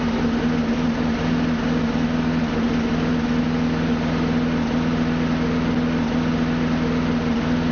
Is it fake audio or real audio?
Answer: real